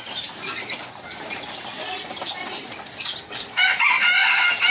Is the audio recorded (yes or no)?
yes